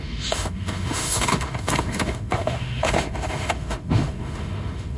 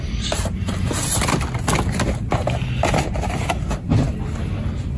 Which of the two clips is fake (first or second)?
first